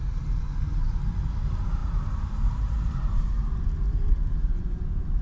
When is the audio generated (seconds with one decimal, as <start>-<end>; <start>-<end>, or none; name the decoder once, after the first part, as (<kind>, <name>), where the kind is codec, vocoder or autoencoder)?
0.0-5.2 (vocoder, BigVGAN v2)